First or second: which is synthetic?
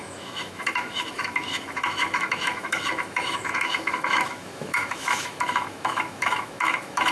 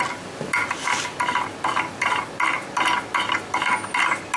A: first